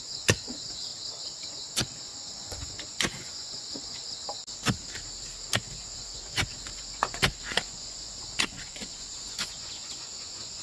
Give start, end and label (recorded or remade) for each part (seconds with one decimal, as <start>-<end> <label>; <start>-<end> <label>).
0.0-0.9 remade; 0.9-1.5 recorded; 1.5-4.0 remade; 4.0-5.7 recorded; 5.7-10.6 remade